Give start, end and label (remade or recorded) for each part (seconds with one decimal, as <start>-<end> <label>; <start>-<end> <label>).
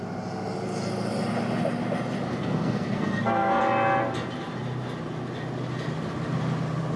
0.0-2.3 recorded; 2.3-3.6 remade; 3.6-7.0 recorded